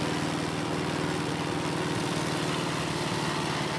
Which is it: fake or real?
real